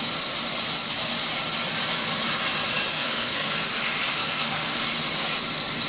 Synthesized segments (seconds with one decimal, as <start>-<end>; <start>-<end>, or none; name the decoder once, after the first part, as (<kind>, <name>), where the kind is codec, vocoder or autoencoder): 2.9-3.5 (codec, SNAC); 4.1-4.8